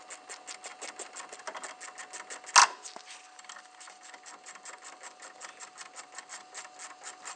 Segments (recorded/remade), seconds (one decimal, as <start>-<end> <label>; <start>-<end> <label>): 0.0-2.6 recorded; 2.6-6.3 remade; 6.3-7.4 recorded